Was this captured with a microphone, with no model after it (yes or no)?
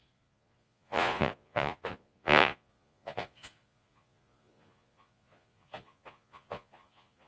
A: no